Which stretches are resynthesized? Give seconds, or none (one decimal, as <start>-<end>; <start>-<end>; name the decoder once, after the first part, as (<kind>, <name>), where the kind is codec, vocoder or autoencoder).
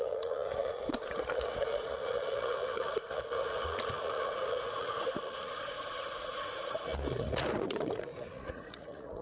0.0-9.2 (vocoder, Vocos)